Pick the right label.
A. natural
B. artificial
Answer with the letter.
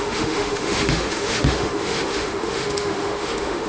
B